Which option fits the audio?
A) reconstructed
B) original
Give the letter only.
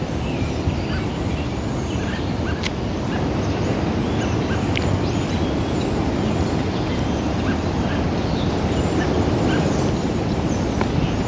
B